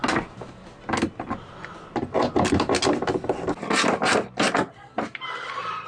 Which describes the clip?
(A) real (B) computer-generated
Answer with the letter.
A